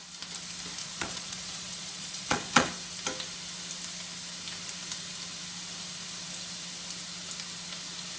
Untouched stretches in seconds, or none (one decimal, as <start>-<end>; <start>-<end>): 0.0-0.8; 2.7-8.2